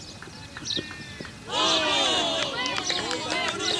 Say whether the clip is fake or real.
real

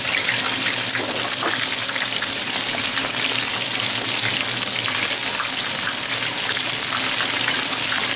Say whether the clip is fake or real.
real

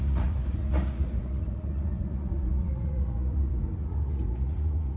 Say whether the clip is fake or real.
fake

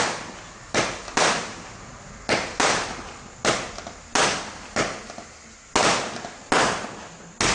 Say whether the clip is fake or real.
real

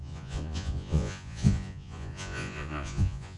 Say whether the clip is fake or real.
fake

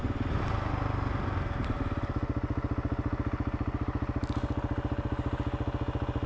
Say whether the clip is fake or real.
real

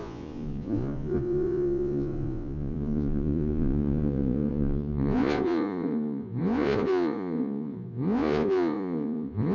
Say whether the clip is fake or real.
fake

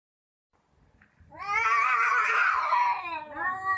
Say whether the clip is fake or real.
real